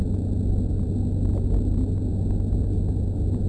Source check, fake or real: real